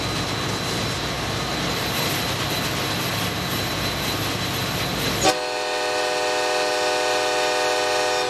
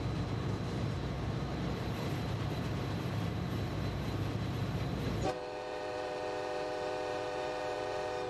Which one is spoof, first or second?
second